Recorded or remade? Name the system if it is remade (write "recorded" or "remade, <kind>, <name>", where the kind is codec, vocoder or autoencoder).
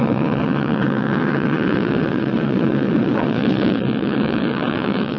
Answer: remade, vocoder, WaveNeXt